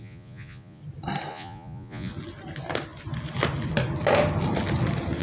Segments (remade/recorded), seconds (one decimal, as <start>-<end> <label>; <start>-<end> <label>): 0.0-0.8 remade; 0.8-1.3 recorded; 1.3-2.1 remade; 2.1-5.2 recorded